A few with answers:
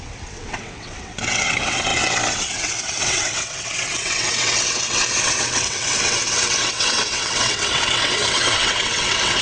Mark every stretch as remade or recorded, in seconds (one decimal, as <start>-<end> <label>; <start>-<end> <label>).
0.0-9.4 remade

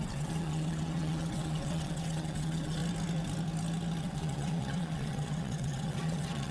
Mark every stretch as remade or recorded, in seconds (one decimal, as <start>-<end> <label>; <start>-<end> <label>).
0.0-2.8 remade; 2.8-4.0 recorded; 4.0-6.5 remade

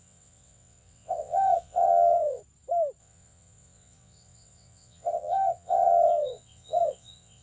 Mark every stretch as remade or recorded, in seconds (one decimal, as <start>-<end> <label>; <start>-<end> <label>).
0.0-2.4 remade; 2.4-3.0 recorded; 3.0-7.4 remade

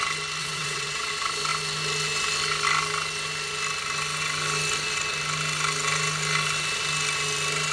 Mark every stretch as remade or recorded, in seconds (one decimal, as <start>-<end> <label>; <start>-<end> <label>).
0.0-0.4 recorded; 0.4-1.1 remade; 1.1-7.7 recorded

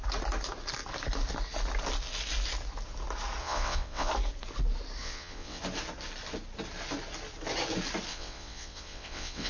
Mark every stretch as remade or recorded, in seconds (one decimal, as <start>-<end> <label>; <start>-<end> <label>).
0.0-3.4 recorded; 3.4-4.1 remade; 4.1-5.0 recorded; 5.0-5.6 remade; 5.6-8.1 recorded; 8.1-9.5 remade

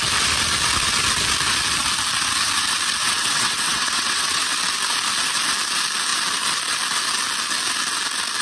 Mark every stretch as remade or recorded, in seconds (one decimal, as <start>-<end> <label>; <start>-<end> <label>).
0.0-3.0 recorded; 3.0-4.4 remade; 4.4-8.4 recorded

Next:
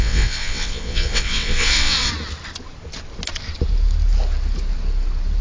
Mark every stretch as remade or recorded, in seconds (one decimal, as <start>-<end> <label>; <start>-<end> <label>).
0.0-2.1 remade; 2.1-5.4 recorded

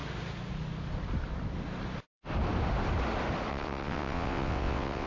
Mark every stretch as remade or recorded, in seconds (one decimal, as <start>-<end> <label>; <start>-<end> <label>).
0.0-3.5 recorded; 3.5-5.1 remade